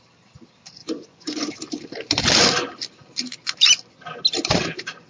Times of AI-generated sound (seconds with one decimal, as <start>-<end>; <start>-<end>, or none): 0.8-1.5